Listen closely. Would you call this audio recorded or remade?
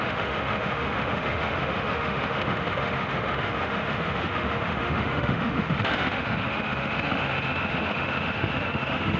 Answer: remade